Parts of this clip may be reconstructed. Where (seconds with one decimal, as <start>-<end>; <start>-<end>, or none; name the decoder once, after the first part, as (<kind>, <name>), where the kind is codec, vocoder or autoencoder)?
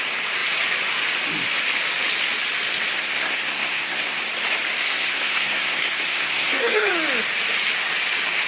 2.9-4.2 (codec, SNAC); 4.8-6.9